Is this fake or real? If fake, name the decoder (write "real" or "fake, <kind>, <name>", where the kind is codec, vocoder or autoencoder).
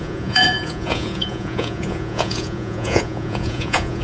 fake, vocoder, Vocos